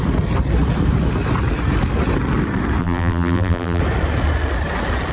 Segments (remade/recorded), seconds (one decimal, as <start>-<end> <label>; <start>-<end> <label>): 0.0-2.8 recorded; 2.8-3.8 remade; 3.8-5.1 recorded